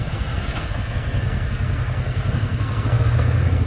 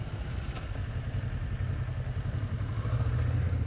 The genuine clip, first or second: second